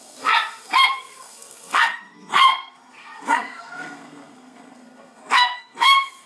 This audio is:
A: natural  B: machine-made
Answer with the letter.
B